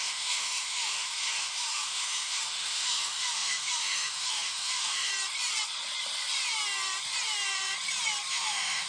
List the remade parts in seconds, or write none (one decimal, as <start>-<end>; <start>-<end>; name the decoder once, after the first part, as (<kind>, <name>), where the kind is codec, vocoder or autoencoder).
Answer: 0.0-5.1 (autoencoder, DAC-VAE); 8.3-8.9